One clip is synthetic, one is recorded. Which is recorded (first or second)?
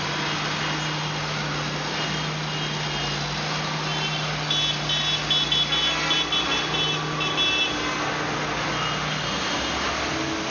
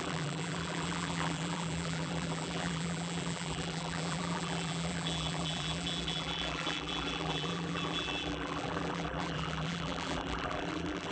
first